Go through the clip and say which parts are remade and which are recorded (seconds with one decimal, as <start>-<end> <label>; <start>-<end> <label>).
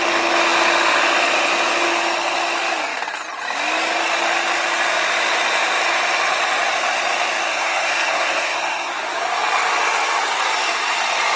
0.0-7.5 recorded; 7.5-8.9 remade; 8.9-11.4 recorded